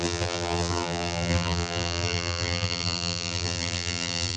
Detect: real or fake fake